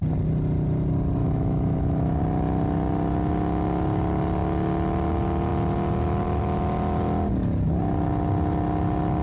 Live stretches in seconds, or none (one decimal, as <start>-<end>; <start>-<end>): 0.0-1.2; 2.2-9.2